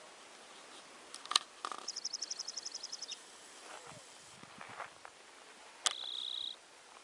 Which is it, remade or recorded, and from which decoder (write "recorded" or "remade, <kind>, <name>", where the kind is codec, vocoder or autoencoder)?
recorded